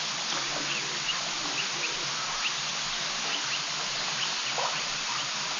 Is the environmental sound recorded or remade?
recorded